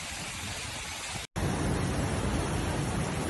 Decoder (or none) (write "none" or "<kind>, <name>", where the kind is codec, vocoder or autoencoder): none